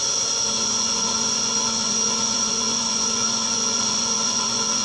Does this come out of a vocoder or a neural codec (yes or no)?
yes